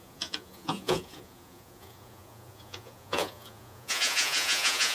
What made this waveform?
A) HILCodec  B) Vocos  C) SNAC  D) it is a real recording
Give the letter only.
B